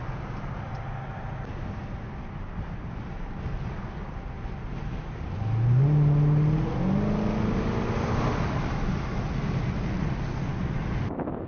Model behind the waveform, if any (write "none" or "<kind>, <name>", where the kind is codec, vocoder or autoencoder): none